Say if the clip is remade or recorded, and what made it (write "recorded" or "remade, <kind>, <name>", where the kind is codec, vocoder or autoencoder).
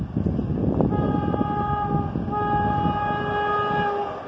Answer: recorded